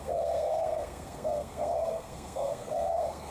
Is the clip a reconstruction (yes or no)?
yes